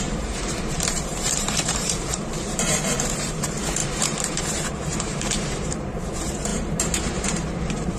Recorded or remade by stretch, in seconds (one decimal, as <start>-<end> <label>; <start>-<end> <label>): 0.0-8.0 remade